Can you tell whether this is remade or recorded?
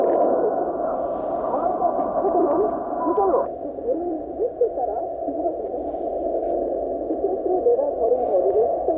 recorded